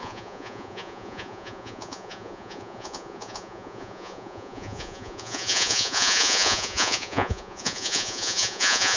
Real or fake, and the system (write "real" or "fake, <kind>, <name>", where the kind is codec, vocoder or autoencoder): fake, vocoder, Vocos